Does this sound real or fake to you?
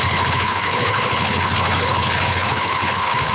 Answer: fake